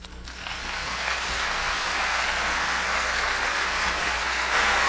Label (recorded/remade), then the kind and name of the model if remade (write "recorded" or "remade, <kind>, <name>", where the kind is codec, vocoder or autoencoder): remade, codec, SNAC